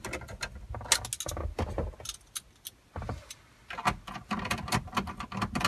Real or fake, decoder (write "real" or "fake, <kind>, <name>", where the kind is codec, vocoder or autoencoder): real